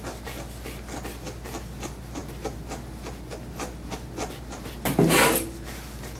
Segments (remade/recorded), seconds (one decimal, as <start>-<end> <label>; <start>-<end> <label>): 0.0-6.2 recorded